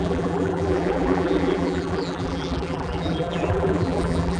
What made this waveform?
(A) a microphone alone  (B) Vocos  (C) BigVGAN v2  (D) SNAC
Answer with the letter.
C